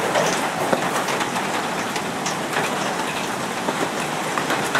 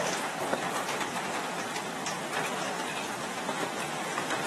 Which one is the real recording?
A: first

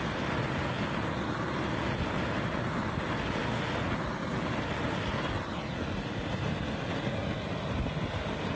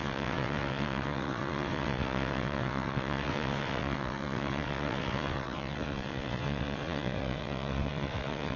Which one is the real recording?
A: first